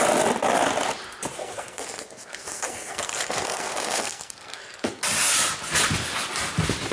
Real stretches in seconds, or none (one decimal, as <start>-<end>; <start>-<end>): 0.0-1.4; 5.0-6.9